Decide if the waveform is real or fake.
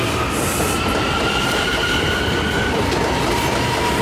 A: real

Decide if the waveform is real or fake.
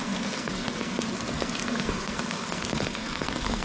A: fake